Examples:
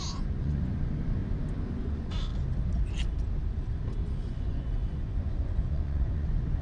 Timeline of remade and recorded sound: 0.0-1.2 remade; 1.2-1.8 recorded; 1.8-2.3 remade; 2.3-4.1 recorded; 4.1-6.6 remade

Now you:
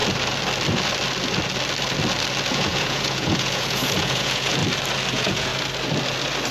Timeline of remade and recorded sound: 0.0-2.5 recorded; 2.5-4.6 remade; 4.6-5.1 recorded; 5.1-5.5 remade; 5.5-6.5 recorded